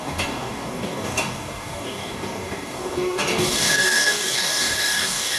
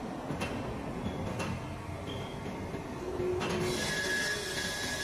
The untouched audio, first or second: second